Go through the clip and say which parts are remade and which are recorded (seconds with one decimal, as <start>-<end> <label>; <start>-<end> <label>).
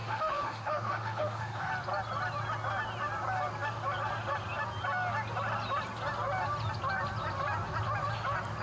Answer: 0.0-1.7 remade; 1.7-8.6 recorded